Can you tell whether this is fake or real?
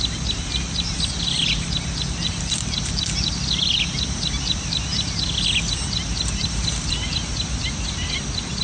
real